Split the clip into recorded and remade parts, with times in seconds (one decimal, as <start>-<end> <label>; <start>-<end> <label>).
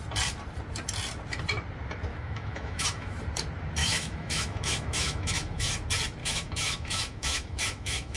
0.0-2.1 recorded; 2.1-3.2 remade; 3.2-3.8 recorded; 3.8-5.7 remade; 5.7-6.2 recorded; 6.2-8.2 remade